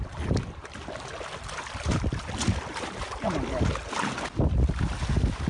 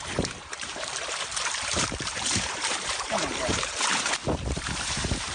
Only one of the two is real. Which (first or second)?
first